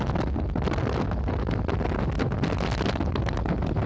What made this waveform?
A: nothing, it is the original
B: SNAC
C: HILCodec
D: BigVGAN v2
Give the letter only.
A